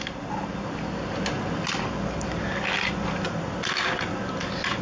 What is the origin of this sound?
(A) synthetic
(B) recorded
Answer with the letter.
B